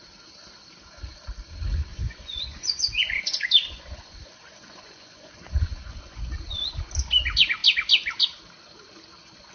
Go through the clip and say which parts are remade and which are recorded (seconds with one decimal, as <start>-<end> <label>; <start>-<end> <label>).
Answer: 0.0-1.9 recorded; 1.9-6.8 remade; 6.8-9.5 recorded

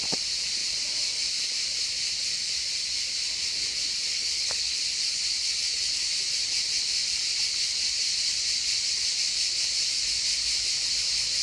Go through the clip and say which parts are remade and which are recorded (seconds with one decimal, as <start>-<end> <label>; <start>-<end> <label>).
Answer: 0.0-4.1 recorded; 4.1-4.8 remade; 4.8-11.4 recorded

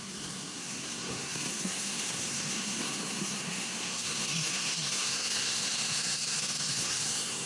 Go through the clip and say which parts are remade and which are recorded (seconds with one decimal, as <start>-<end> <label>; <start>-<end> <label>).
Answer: 0.0-7.5 remade

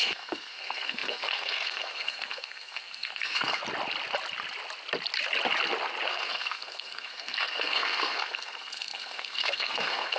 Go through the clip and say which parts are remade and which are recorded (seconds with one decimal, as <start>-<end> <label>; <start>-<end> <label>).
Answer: 0.0-3.6 remade; 3.6-6.1 recorded; 6.1-10.2 remade

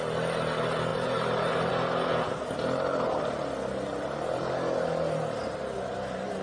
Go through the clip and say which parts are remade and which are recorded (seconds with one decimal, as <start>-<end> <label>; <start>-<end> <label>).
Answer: 0.0-0.9 recorded; 0.9-1.7 remade; 1.7-6.4 recorded

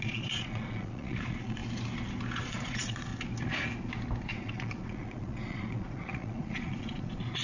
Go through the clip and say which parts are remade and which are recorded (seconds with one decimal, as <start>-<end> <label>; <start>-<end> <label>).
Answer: 0.0-1.6 remade; 1.6-2.4 recorded; 2.4-3.1 remade; 3.1-4.2 recorded; 4.2-7.4 remade